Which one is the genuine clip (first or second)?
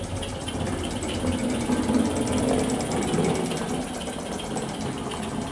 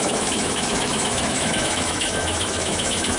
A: first